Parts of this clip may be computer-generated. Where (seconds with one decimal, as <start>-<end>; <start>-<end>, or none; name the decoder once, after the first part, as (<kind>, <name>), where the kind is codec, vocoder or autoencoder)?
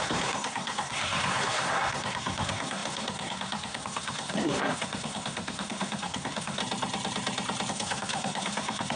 0.0-6.6 (codec, SNAC); 7.7-9.0